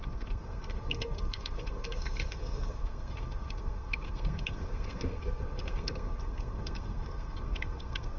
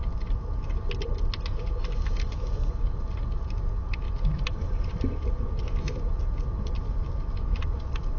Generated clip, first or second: first